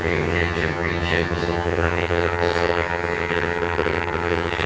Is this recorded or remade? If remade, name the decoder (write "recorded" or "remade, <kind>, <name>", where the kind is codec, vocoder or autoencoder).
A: remade, vocoder, HiFi-GAN